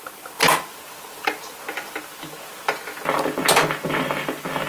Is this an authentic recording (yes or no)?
yes